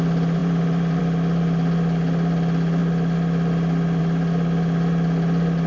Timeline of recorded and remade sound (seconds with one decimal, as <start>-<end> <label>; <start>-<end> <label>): 0.0-0.4 recorded; 0.4-1.0 remade; 1.0-5.7 recorded